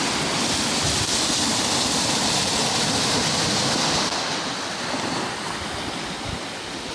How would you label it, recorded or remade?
recorded